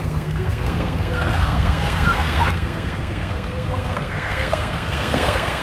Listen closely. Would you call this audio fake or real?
fake